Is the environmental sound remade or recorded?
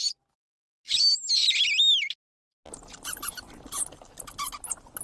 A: recorded